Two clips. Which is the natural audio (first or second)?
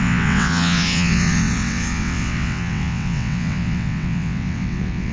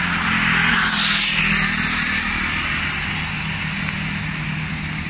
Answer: second